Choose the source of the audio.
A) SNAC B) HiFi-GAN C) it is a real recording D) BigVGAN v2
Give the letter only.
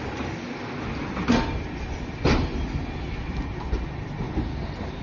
C